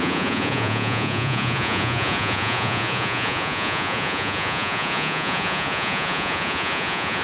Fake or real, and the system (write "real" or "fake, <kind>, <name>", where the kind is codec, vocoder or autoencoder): fake, vocoder, Vocos